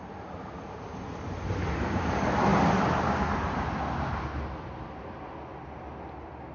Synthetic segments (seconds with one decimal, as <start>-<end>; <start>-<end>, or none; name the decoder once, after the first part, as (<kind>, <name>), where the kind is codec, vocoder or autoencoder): none